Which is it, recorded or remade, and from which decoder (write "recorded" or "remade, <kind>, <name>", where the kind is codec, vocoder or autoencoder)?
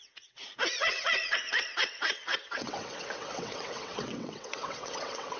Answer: remade, vocoder, WaveNeXt